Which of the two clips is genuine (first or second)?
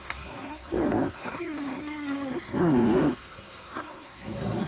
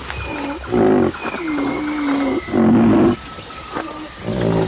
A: second